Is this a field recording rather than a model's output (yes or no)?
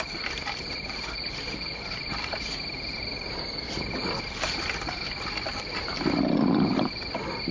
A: no